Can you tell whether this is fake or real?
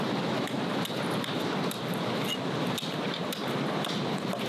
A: real